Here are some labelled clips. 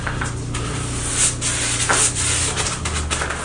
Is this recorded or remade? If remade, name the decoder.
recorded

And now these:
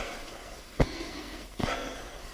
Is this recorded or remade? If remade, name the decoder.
remade, codec, SNAC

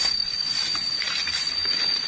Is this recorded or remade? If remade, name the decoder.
recorded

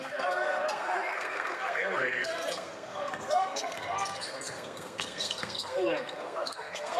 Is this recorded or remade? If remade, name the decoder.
remade, codec, SNAC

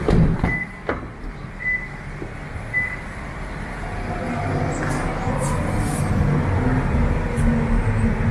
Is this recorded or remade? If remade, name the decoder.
recorded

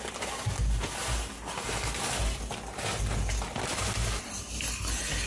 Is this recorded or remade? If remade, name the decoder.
recorded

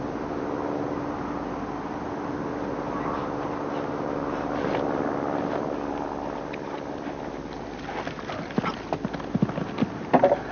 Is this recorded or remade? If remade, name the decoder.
recorded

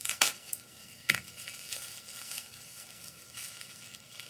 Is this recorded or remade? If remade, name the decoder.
remade, codec, SNAC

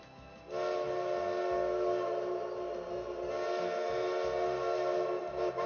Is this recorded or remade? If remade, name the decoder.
recorded